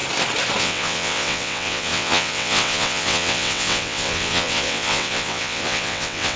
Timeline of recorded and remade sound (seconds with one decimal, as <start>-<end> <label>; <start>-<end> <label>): 0.0-0.6 recorded; 0.6-6.4 remade